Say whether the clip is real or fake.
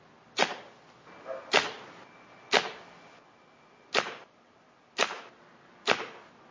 real